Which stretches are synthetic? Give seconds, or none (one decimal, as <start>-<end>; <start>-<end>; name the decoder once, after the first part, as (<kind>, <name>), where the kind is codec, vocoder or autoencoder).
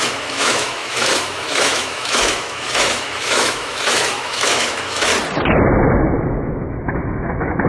0.0-5.1 (autoencoder, DAC-VAE); 6.2-7.7